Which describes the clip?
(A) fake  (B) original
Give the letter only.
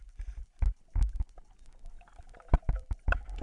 A